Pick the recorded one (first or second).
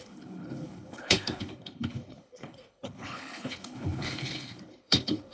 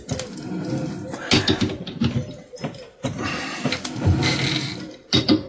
second